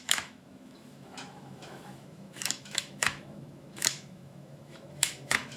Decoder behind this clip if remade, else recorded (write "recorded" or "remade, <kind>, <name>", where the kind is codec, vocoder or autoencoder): remade, autoencoder, DAC-VAE